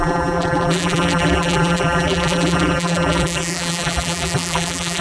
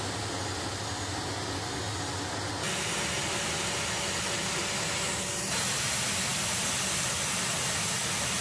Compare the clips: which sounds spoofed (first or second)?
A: first